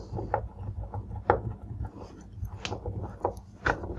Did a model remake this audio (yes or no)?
no